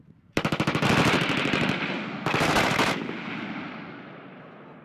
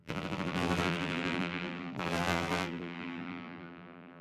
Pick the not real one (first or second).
second